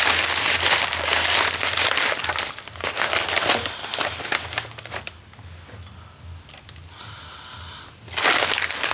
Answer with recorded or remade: recorded